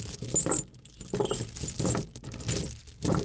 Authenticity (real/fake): real